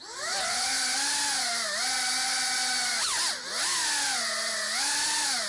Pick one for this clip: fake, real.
real